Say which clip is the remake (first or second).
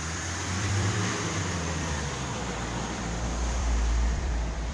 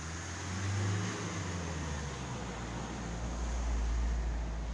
first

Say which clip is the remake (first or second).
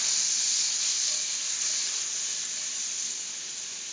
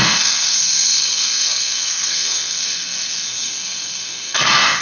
second